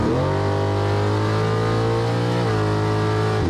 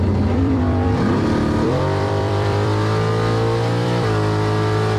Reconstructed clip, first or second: second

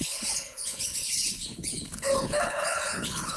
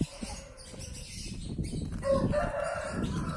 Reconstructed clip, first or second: first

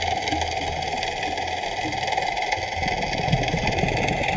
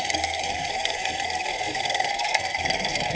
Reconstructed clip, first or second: second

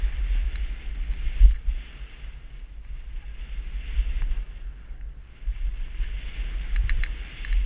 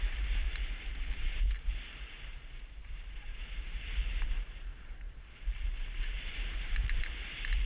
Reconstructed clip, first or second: second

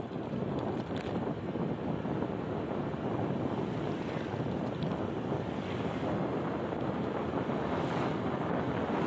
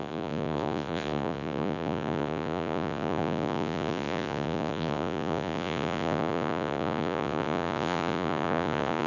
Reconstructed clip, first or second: second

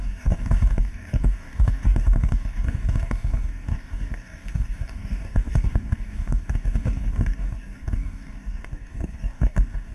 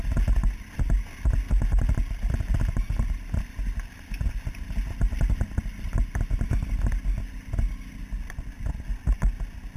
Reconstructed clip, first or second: first